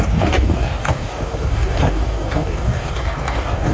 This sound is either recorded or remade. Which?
remade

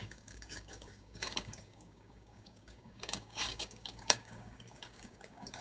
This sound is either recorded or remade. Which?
remade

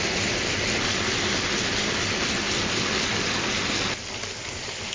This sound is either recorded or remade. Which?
recorded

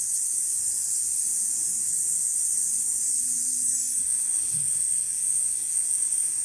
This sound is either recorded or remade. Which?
remade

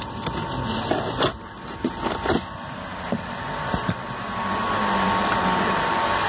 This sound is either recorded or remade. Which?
recorded